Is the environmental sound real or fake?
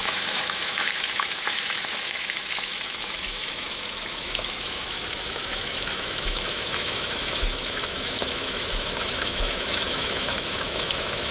fake